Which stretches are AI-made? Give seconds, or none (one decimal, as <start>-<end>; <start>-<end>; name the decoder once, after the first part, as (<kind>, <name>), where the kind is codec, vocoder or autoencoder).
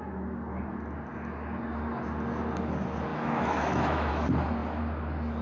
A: 3.1-4.1 (autoencoder, DAC-VAE)